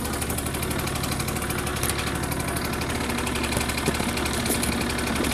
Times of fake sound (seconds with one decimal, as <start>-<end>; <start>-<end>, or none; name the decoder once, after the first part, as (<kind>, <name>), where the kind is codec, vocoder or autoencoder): none